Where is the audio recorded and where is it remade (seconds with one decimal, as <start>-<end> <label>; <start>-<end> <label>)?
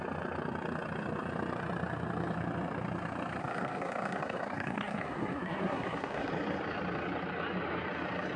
0.0-3.4 recorded; 3.4-6.3 remade; 6.3-8.4 recorded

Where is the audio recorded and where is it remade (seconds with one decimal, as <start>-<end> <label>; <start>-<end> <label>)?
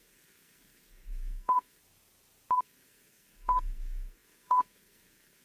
0.0-1.8 remade; 1.8-2.6 recorded; 2.6-5.4 remade